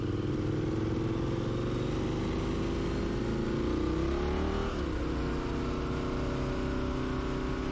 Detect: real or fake real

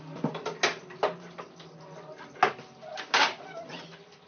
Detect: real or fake real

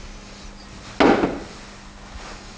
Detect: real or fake real